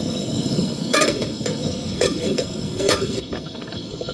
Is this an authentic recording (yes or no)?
no